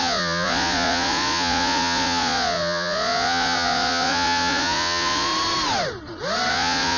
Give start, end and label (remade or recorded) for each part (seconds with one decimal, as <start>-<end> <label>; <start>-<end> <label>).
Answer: 0.0-5.3 remade; 5.3-6.5 recorded; 6.5-7.0 remade